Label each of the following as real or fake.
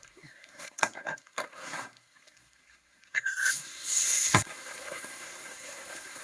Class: fake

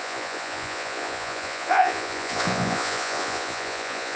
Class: fake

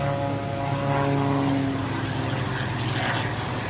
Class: real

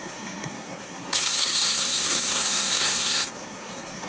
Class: fake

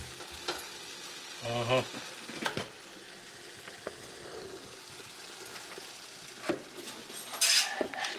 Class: real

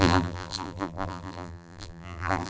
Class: fake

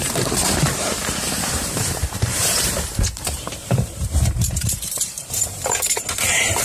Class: fake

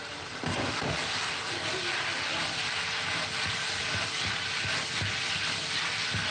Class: real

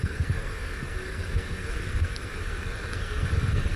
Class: fake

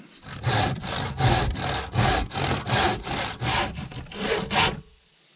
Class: real